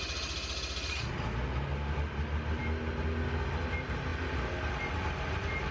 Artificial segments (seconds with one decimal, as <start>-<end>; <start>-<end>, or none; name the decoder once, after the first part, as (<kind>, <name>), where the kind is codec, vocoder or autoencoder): none